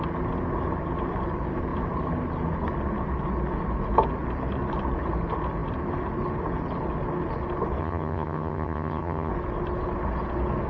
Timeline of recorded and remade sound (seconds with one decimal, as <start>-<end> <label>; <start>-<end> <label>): 0.0-7.8 recorded; 7.8-9.3 remade; 9.3-10.7 recorded